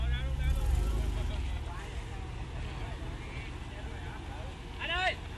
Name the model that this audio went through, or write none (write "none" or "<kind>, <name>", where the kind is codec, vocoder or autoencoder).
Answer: none